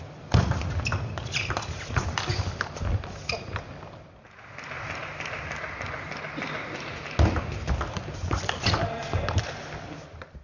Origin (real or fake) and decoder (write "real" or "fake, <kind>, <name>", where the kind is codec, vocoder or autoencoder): real